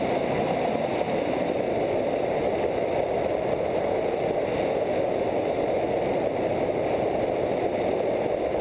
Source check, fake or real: real